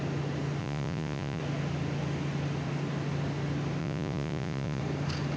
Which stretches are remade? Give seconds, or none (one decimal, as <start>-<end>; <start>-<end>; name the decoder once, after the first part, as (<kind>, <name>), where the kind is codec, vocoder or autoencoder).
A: 0.6-1.4 (vocoder, Vocos); 3.8-4.8